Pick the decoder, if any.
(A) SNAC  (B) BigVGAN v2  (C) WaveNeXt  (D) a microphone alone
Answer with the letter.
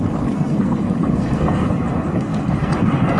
A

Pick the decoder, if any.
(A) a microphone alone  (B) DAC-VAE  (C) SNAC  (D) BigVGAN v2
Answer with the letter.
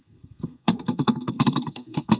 C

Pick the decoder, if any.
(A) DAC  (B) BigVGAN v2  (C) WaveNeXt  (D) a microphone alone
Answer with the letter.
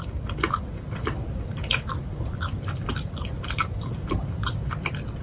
B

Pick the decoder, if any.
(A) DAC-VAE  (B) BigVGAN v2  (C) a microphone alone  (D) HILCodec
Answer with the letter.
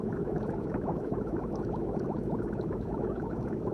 A